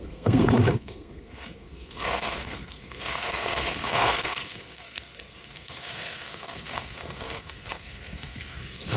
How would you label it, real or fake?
fake